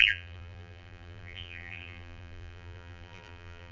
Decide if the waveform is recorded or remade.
remade